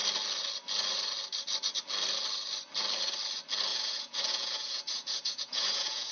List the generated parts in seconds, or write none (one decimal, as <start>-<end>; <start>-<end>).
3.7-6.1

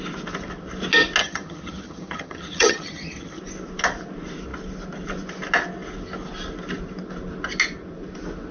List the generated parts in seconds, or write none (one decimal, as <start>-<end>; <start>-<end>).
1.2-3.4

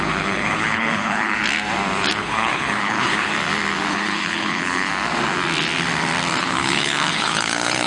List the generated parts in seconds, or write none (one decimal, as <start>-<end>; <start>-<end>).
0.0-1.4; 2.2-3.3; 3.9-4.9; 6.4-7.9

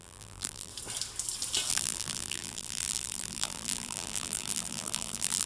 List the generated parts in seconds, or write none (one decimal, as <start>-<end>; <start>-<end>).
0.0-0.7; 1.7-5.5

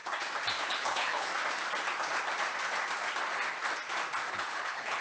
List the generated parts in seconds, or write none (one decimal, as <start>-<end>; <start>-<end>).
0.6-1.3; 4.3-5.0

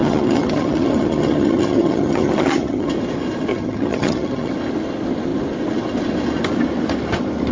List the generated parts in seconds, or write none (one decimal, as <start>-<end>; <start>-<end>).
0.0-2.9; 3.5-4.5

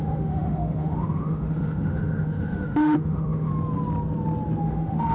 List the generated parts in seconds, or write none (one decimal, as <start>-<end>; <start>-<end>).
0.0-3.5; 4.6-5.1

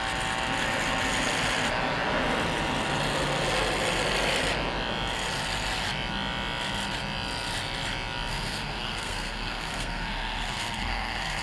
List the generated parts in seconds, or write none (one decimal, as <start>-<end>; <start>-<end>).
8.3-11.4